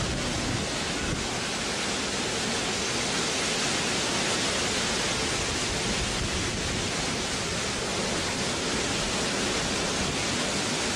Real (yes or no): yes